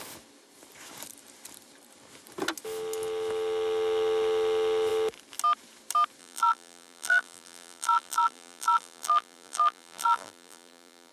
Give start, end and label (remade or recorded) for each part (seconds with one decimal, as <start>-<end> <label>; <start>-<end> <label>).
0.0-6.2 recorded; 6.2-11.1 remade